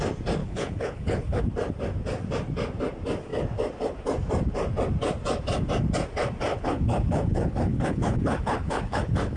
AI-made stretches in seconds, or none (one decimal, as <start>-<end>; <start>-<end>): 0.4-1.4; 6.5-9.4